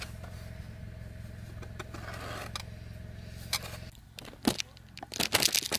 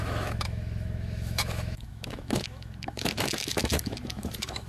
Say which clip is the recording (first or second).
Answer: first